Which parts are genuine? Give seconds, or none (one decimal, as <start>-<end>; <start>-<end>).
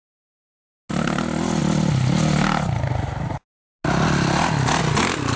0.0-5.4